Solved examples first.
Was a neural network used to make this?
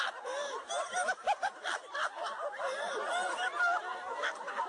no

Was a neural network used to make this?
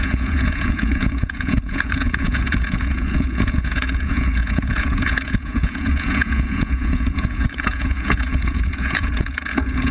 yes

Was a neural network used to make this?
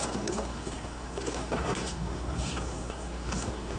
yes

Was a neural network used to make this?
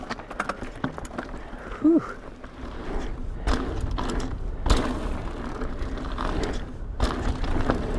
no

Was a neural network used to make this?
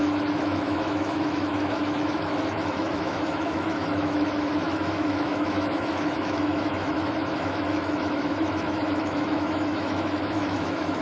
yes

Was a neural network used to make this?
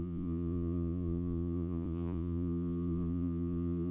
yes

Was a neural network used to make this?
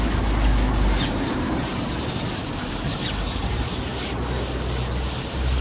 no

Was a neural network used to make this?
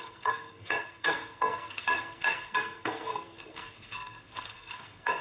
yes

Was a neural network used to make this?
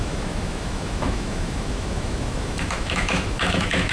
yes